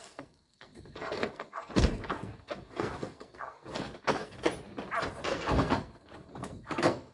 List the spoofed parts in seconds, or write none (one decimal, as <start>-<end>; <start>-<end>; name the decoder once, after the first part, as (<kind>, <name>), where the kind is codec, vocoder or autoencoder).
0.0-4.5 (codec, SNAC); 5.1-7.1